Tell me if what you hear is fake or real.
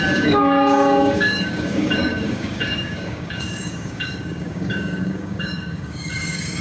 fake